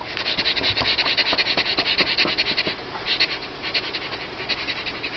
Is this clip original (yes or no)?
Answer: yes